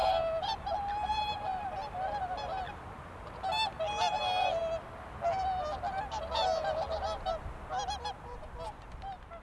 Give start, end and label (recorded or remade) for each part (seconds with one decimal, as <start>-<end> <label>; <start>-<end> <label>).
0.0-9.4 recorded